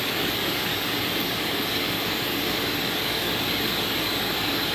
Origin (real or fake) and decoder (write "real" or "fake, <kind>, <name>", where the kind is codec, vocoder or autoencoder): fake, codec, DAC